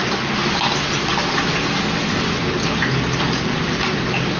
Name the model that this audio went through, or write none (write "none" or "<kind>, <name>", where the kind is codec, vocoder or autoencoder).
none